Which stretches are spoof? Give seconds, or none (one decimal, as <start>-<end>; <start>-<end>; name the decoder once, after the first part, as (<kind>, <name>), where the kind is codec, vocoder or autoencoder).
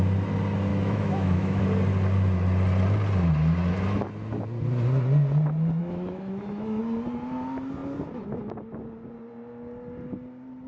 0.7-1.6 (autoencoder, DAC-VAE); 5.8-6.8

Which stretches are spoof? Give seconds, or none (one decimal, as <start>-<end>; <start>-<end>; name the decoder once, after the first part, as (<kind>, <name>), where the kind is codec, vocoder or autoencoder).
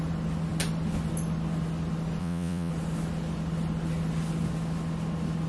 2.2-2.7 (vocoder, Vocos)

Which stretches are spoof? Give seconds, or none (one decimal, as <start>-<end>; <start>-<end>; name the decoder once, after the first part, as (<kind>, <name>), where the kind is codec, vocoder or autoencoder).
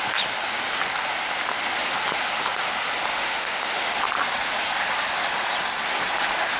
3.1-4.0 (autoencoder, DAC-VAE)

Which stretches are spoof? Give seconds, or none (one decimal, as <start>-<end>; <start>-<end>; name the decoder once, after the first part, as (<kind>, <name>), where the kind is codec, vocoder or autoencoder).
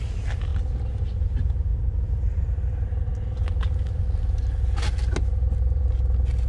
none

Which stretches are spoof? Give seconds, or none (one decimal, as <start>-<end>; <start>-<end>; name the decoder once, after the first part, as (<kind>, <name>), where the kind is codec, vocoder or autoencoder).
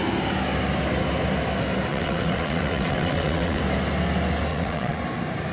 1.9-3.6 (vocoder, WaveNeXt); 4.5-5.0